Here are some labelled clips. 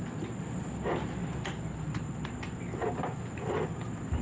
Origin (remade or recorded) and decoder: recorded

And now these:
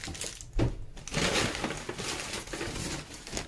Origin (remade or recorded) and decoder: recorded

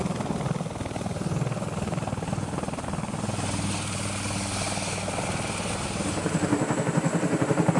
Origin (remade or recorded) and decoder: recorded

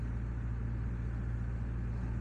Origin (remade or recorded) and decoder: recorded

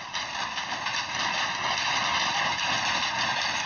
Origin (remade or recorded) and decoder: recorded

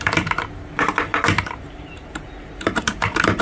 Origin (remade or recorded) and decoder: remade, vocoder, BigVGAN v2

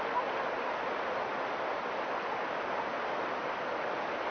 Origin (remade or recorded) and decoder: recorded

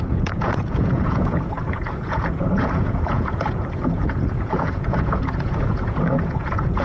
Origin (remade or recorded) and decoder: remade, vocoder, Vocos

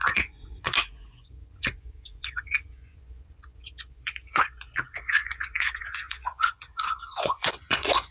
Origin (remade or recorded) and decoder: remade, vocoder, Vocos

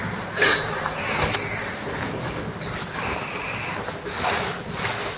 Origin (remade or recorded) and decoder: recorded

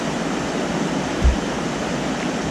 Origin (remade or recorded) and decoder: recorded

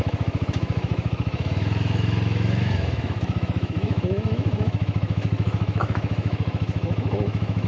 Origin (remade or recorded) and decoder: remade, autoencoder, DAC-VAE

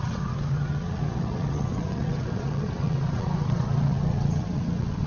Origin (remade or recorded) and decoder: remade, vocoder, WaveNeXt